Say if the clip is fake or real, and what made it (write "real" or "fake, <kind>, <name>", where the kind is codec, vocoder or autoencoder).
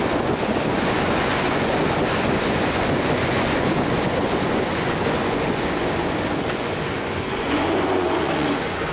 fake, vocoder, Vocos